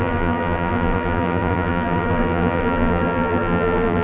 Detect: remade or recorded remade